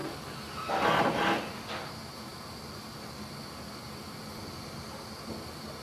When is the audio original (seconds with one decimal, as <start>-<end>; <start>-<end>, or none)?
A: 0.0-5.8